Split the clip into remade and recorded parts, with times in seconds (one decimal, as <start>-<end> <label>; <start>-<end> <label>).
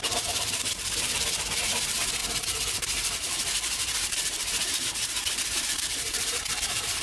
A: 0.0-7.0 remade